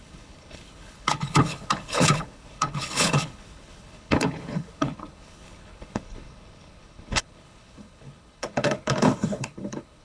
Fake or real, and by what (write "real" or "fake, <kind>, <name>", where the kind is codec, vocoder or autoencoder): fake, codec, HILCodec